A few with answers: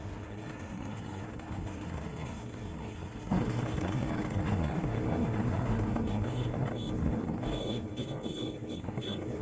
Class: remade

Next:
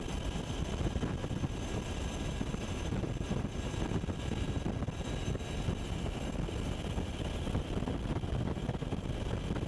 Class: recorded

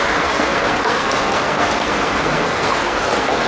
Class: remade